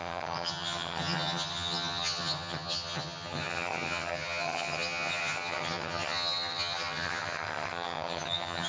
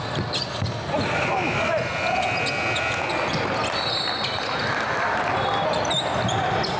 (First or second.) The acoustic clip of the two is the second